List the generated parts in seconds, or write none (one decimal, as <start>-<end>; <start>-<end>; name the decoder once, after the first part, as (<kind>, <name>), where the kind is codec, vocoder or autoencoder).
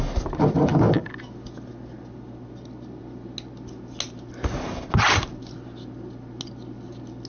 none